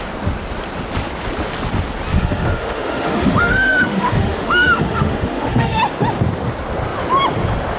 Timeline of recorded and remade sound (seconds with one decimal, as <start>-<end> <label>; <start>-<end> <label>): 0.0-2.1 recorded; 2.1-5.8 remade; 5.8-7.8 recorded